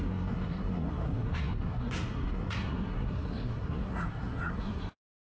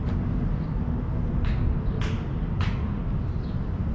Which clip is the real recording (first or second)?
second